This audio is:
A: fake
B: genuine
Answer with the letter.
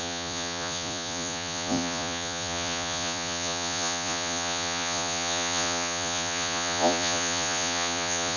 A